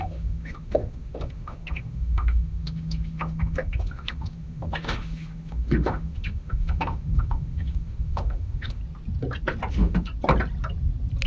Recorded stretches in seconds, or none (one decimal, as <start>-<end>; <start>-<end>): 8.8-9.7; 10.1-11.3